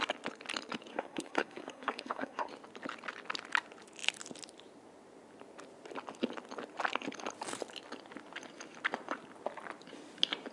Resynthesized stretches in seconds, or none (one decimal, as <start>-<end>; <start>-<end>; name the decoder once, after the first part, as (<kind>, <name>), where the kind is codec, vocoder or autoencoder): 0.9-2.5 (codec, SNAC)